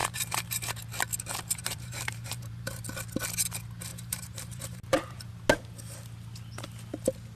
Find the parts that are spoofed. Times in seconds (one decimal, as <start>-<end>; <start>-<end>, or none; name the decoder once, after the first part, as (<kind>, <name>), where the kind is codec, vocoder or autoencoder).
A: 0.0-0.6 (vocoder, BigVGAN v2); 1.6-2.8; 3.9-5.3